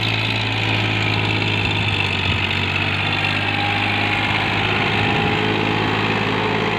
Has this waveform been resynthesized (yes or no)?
no